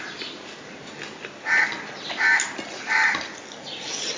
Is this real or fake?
real